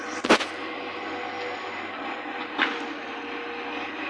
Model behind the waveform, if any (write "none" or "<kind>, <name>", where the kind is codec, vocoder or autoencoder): none